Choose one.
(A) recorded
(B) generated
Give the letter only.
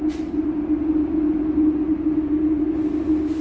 A